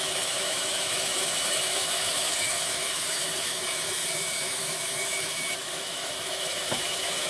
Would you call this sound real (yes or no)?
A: no